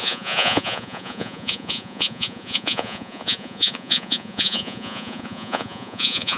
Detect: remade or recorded remade